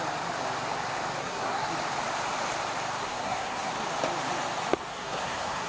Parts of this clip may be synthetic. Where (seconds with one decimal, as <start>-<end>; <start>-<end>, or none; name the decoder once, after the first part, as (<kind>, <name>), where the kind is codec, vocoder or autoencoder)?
1.2-1.7 (codec, SNAC); 3.0-3.7; 4.9-5.7